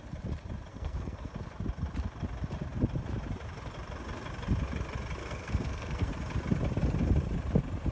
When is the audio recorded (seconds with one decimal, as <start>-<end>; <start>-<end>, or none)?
0.0-0.7; 1.3-5.2; 6.1-7.9